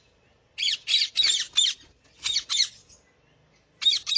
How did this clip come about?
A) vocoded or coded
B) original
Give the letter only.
B